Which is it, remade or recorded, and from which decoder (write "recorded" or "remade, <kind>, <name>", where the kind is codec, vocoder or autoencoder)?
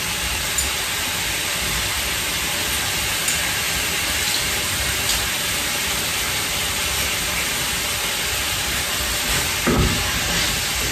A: recorded